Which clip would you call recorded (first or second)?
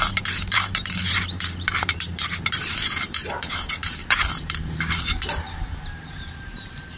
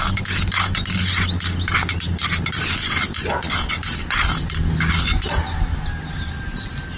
second